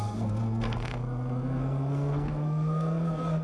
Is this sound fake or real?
fake